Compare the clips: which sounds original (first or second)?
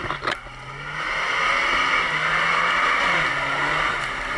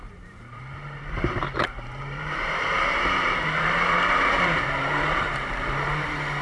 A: first